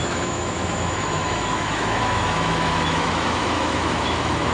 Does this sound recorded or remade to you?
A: remade